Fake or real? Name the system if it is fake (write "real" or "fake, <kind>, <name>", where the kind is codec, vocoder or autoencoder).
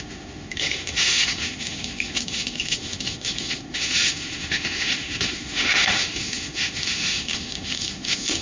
fake, autoencoder, DAC-VAE